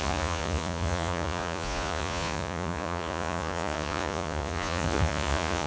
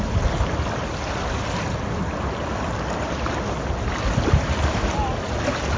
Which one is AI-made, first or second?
first